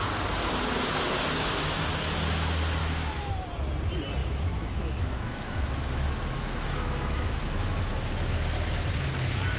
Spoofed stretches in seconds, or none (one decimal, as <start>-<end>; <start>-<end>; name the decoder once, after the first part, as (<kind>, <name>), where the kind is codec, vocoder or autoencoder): 2.8-3.3 (autoencoder, DAC-VAE); 4.2-8.1